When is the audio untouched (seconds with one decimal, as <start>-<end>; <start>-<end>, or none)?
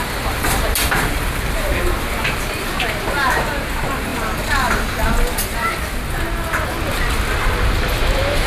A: 0.0-8.5